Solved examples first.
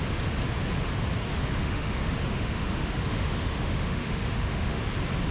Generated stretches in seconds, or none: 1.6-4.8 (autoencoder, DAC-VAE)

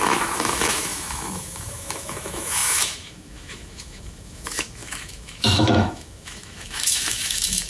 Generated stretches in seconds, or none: 0.0-7.7 (autoencoder, DAC-VAE)

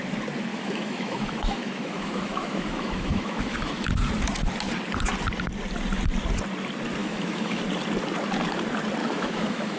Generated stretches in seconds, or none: 0.5-3.9 (autoencoder, DAC-VAE); 7.0-7.6; 9.0-9.8

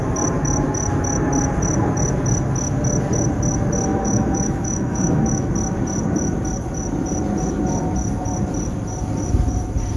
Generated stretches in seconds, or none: 3.9-5.5 (autoencoder, DAC-VAE)

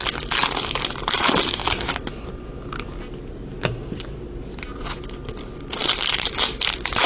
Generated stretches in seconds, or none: none